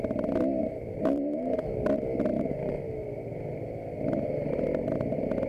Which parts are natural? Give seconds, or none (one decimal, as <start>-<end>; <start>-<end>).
0.0-0.6; 1.6-2.3; 3.4-5.5